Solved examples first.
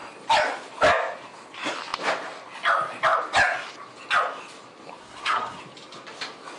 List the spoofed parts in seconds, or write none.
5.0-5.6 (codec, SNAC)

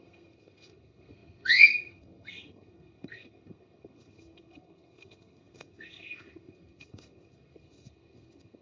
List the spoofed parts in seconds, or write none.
0.0-8.6 (codec, SNAC)

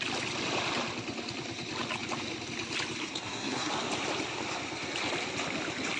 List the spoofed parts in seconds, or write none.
3.0-3.7 (codec, SNAC)